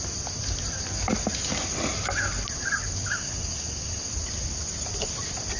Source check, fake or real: real